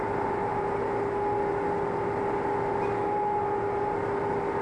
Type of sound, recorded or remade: recorded